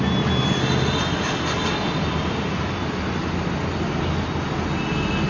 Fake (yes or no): no